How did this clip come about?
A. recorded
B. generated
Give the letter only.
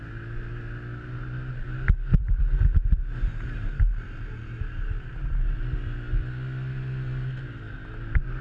A